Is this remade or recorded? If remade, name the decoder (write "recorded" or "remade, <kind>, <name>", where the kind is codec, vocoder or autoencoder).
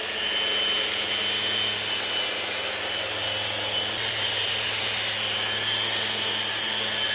recorded